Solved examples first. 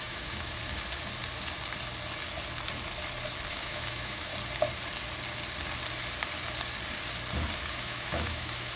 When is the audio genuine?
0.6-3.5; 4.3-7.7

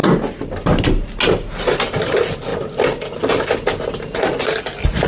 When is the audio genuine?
0.0-5.1

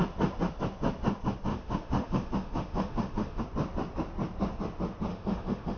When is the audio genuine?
0.0-1.5; 3.4-5.1

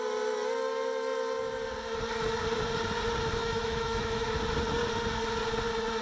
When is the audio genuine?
0.0-3.4; 4.4-6.0

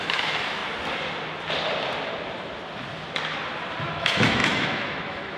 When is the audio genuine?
0.6-3.8

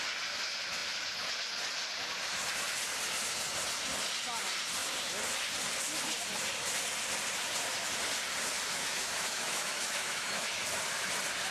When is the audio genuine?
0.0-8.7; 10.5-11.5